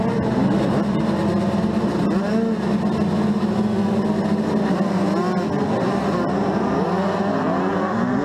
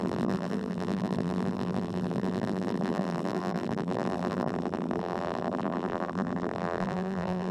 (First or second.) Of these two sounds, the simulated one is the second